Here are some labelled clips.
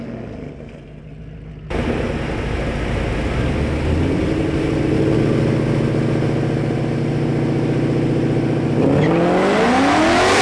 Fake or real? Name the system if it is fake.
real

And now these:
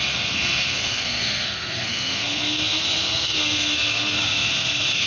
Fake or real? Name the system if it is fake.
fake, codec, SNAC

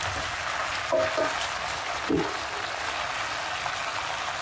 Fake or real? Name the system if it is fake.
real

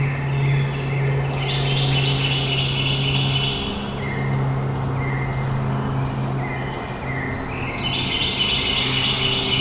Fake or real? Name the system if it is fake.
real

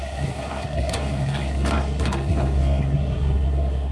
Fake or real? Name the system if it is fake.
fake, codec, SNAC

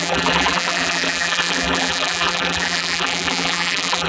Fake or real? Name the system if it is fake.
fake, vocoder, BigVGAN v2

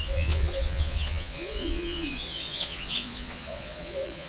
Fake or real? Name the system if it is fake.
fake, vocoder, Vocos